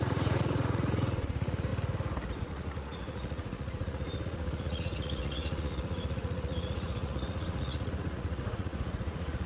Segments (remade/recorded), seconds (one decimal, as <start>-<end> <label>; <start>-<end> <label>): 0.0-1.7 remade; 1.7-2.4 recorded; 2.4-9.5 remade